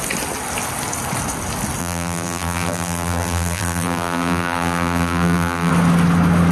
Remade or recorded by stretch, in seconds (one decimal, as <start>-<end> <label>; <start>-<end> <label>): 0.0-1.8 recorded; 1.8-5.7 remade; 5.7-6.5 recorded